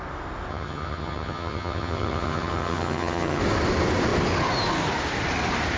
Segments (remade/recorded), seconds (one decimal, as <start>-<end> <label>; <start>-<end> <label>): 0.0-0.5 recorded; 0.5-3.4 remade; 3.4-5.8 recorded